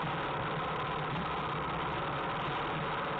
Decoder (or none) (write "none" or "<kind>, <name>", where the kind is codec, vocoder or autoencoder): none